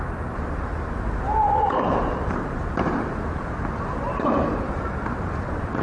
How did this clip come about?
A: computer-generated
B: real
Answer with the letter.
A